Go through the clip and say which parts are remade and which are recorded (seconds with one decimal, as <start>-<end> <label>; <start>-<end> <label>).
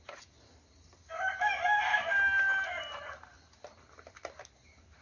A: 0.0-5.0 recorded